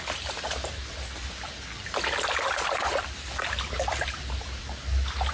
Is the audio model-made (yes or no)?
no